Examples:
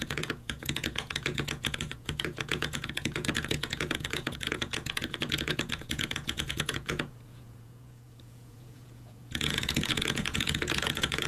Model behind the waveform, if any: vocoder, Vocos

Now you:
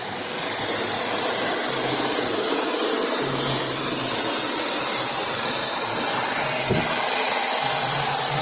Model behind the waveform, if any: none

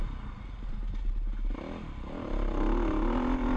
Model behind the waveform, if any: none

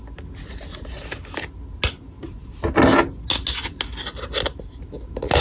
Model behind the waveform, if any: none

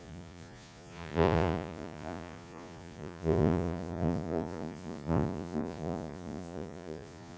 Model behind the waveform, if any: vocoder, Vocos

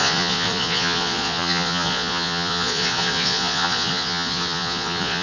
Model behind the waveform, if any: vocoder, Vocos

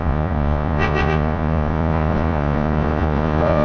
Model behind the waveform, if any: vocoder, Vocos